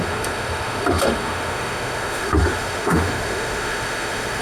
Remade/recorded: remade